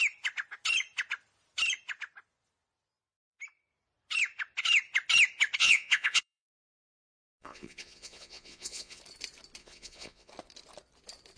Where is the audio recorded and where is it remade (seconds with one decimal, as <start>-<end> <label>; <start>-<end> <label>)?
0.0-5.6 recorded; 5.6-9.0 remade; 9.0-9.6 recorded; 9.6-10.3 remade; 10.3-11.4 recorded